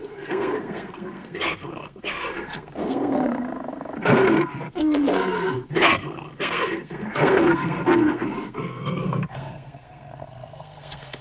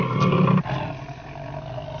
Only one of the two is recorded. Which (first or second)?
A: second